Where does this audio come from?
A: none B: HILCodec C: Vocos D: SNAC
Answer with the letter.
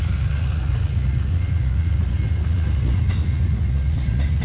C